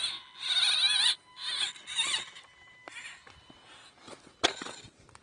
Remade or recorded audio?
recorded